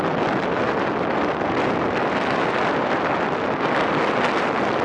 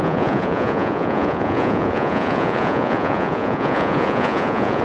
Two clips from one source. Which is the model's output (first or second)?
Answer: second